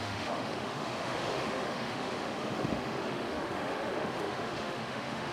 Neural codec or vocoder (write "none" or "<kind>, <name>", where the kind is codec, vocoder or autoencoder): autoencoder, DAC-VAE